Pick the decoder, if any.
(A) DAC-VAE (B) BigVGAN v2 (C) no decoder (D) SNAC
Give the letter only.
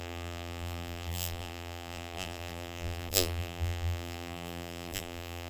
B